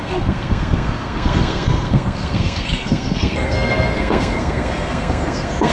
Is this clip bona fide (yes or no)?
no